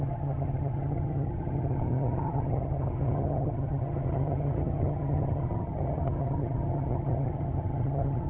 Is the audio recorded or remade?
remade